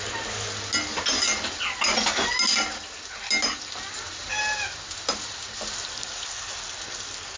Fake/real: real